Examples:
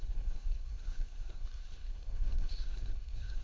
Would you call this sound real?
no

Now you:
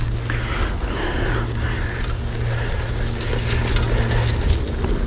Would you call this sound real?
yes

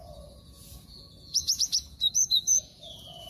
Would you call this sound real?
no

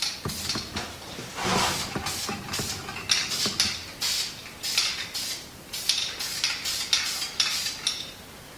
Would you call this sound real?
yes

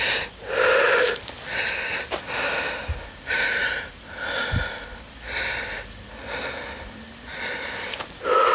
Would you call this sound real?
yes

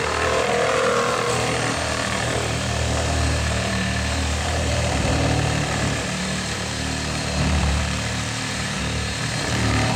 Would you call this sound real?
no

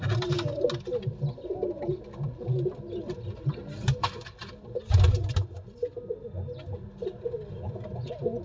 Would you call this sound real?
yes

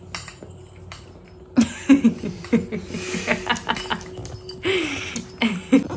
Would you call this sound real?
yes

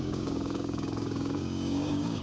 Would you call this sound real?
no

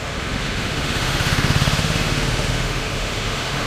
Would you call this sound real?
no